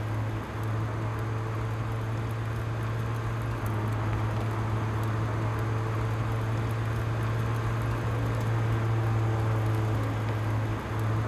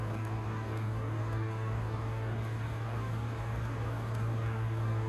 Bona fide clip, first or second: first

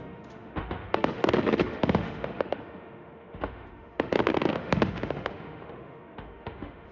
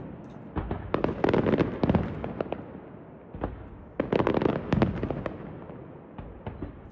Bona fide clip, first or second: second